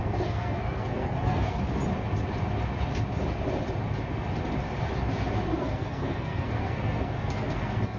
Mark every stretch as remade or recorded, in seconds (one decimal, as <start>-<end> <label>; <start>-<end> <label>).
0.0-1.6 remade; 1.6-5.6 recorded; 5.6-8.0 remade